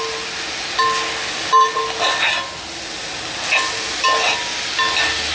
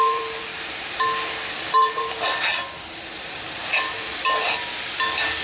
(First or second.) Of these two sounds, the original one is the first